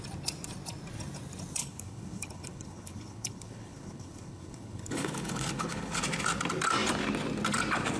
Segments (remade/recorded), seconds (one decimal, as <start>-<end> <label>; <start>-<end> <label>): 0.0-1.6 recorded; 1.6-6.0 remade; 6.0-8.0 recorded